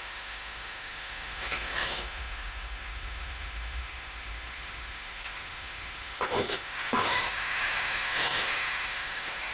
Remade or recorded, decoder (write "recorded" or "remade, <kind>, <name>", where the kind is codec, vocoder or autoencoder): remade, autoencoder, DAC-VAE